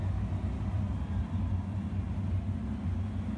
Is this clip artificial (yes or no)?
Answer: no